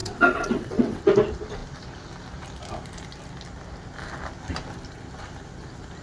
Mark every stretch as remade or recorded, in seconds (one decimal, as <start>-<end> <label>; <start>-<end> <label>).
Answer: 0.0-1.0 remade; 1.0-6.0 recorded